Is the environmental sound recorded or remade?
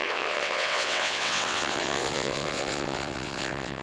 remade